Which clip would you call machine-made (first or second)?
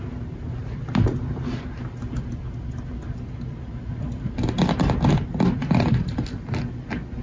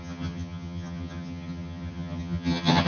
second